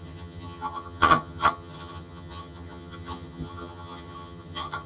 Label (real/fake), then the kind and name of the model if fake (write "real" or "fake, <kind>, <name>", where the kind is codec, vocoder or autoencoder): fake, vocoder, HiFi-GAN